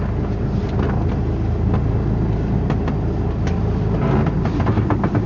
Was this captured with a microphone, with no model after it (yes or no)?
yes